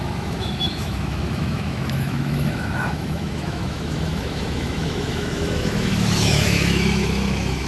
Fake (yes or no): yes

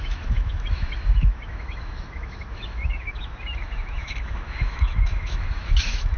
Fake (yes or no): yes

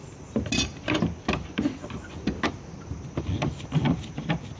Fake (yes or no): no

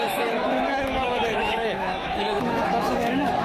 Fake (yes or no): yes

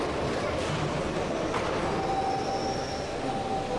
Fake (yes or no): no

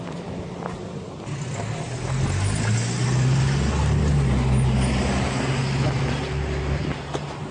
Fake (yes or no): no